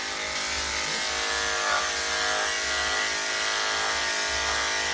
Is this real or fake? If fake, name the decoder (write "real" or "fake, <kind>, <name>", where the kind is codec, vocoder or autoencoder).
real